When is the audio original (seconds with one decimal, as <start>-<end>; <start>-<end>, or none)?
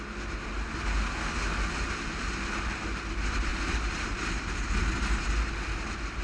0.0-3.5; 4.3-6.2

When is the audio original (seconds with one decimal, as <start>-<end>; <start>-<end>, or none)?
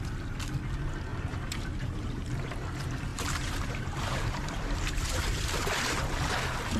0.0-1.1; 2.6-3.1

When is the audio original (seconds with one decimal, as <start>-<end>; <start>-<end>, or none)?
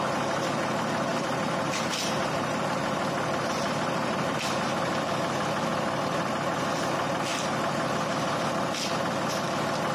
0.0-1.1; 6.3-7.3; 8.4-9.9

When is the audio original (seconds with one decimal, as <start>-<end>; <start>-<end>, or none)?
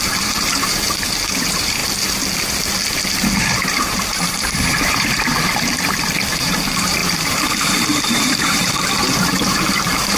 1.8-3.4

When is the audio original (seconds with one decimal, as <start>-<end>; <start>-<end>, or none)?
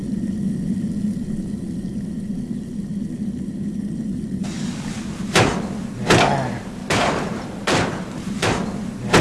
0.0-6.8; 8.5-9.2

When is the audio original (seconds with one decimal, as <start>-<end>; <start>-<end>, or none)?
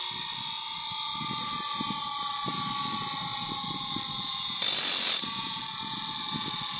0.0-6.8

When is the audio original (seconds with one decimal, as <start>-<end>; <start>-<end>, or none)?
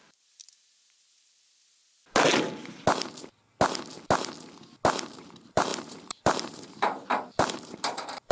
1.8-5.1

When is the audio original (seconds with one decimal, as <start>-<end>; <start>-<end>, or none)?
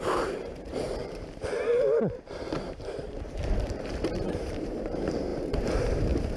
none